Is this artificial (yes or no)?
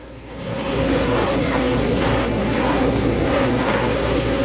yes